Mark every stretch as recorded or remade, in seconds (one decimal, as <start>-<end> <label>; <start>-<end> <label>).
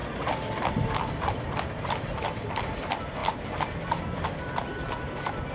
0.0-5.5 recorded